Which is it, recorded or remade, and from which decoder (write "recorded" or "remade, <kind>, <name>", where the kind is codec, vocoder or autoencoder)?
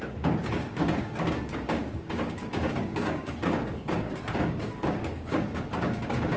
remade, codec, DAC